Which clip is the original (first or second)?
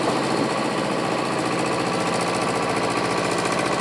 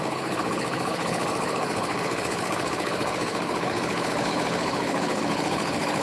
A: first